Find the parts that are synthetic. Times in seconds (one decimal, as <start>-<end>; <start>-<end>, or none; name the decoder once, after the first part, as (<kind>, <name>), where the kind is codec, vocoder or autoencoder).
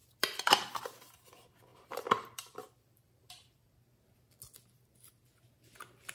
0.0-0.8 (vocoder, BigVGAN v2); 1.7-3.7